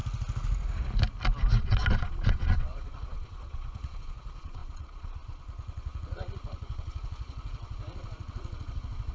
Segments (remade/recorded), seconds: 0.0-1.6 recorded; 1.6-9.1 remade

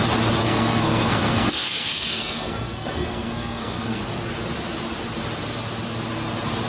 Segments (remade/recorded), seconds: 0.0-0.4 recorded; 0.4-4.0 remade; 4.0-6.7 recorded

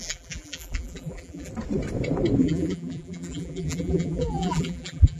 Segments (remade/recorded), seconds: 0.0-1.5 remade; 1.5-2.4 recorded; 2.4-5.2 remade

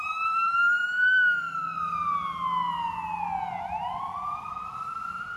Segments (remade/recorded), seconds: 0.0-0.8 remade; 0.8-4.0 recorded; 4.0-5.4 remade

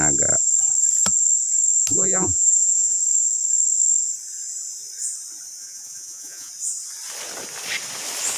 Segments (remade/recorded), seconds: 0.0-1.9 recorded; 1.9-3.0 remade; 3.0-5.6 recorded; 5.6-6.5 remade; 6.5-8.4 recorded